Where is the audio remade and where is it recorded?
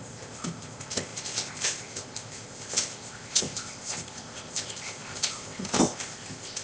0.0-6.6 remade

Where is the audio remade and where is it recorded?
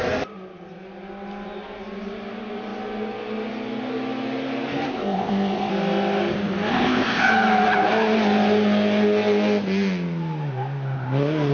0.0-4.9 recorded; 4.9-5.7 remade; 5.7-6.7 recorded; 6.7-7.3 remade; 7.3-11.5 recorded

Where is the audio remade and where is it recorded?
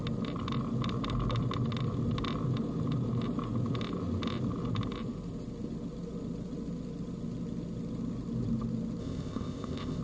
0.0-9.0 recorded; 9.0-10.0 remade